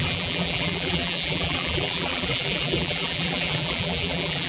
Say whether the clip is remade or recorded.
remade